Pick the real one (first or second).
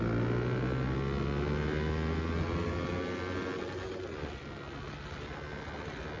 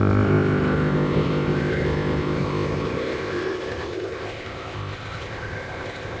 first